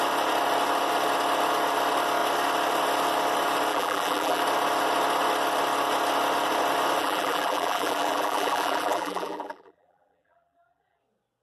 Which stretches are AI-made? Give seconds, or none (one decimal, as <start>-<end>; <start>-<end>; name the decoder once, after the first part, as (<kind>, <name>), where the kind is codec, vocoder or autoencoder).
3.7-4.4 (vocoder, BigVGAN v2); 7.0-11.0